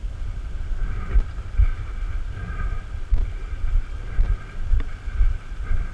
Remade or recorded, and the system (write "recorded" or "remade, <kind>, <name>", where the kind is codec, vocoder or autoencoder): recorded